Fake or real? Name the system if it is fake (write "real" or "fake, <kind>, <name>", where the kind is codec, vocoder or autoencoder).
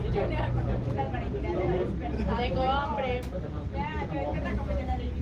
real